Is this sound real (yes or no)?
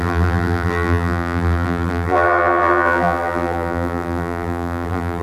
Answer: no